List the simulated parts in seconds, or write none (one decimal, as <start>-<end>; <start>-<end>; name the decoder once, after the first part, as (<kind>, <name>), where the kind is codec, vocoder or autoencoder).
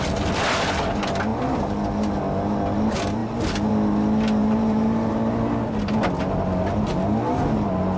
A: 4.4-5.2 (vocoder, BigVGAN v2)